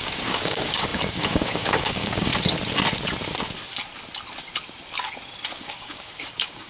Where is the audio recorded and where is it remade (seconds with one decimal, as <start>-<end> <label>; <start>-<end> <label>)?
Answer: 0.0-2.3 remade; 2.3-5.5 recorded; 5.5-6.7 remade